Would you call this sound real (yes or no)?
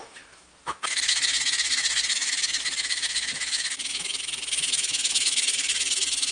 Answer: no